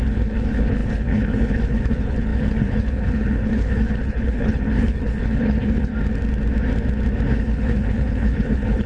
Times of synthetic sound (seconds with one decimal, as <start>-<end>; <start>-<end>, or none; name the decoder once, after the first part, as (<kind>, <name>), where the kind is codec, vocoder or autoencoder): 0.0-5.9 (codec, HILCodec); 7.3-8.9